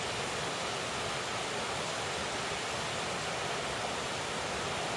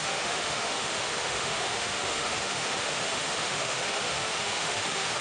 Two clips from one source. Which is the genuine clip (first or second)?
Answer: first